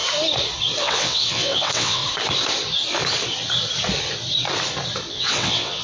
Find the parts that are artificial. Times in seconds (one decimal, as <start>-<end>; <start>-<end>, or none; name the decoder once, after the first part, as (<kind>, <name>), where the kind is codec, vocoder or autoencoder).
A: 0.8-2.0 (vocoder, WaveNeXt); 5.1-5.8